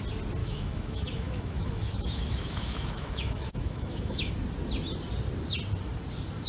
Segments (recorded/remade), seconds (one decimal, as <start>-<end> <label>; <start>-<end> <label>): 0.0-0.4 recorded; 0.4-4.3 remade; 4.3-6.5 recorded